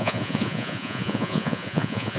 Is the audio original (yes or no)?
no